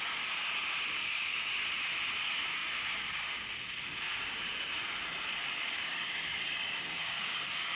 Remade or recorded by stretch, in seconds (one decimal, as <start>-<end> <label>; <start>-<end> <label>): 0.0-1.0 recorded; 1.0-1.5 remade; 1.5-5.4 recorded; 5.4-7.8 remade